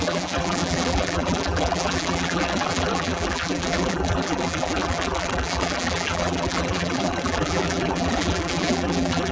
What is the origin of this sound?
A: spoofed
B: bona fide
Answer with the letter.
A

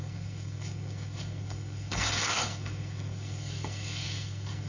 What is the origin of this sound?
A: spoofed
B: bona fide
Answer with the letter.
A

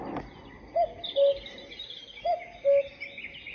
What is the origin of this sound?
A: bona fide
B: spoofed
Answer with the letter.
A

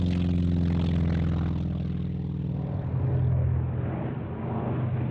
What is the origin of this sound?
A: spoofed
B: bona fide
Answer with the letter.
B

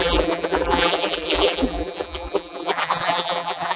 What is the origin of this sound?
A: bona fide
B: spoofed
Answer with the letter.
B